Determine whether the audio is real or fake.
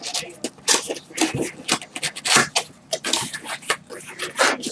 real